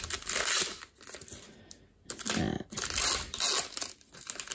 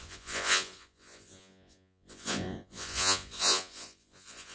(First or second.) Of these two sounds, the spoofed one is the second